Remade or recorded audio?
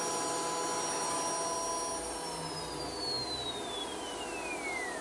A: recorded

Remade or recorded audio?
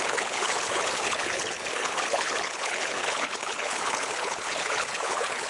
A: remade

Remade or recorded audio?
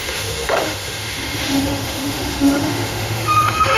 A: remade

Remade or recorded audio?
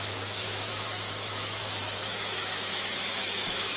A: remade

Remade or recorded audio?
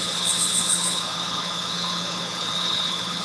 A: remade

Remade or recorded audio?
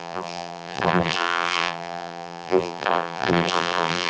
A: remade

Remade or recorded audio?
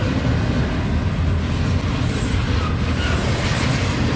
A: recorded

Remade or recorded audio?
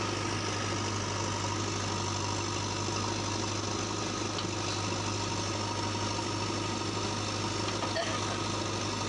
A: recorded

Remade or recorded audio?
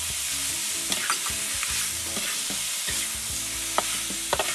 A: recorded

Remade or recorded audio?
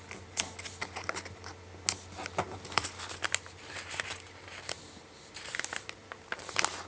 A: recorded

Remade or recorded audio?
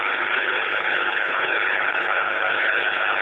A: remade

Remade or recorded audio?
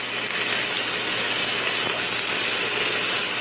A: recorded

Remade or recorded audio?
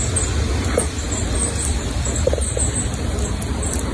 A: recorded